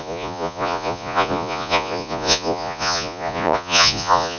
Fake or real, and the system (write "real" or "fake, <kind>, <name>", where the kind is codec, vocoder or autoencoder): fake, vocoder, Vocos